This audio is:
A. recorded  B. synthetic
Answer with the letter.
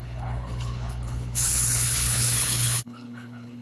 B